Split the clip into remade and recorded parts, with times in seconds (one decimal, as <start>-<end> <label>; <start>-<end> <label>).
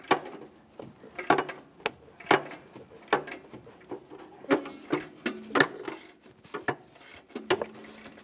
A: 0.0-8.2 recorded